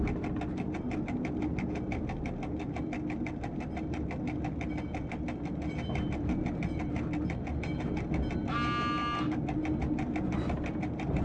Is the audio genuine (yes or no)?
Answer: yes